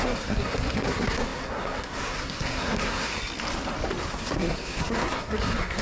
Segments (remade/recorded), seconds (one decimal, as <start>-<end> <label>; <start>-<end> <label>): 0.0-3.1 remade; 3.1-4.1 recorded; 4.1-5.8 remade